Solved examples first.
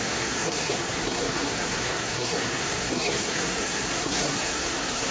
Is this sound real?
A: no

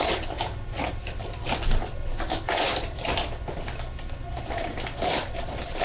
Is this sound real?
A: yes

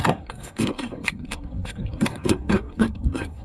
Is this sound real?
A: no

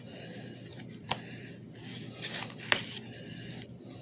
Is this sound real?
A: yes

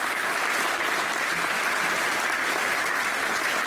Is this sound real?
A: yes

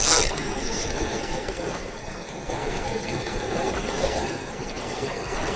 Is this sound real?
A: no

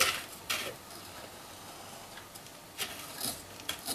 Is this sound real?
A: yes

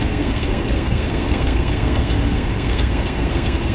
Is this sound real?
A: no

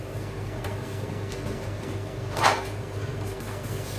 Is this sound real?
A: no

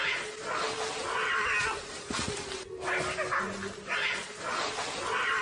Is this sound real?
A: yes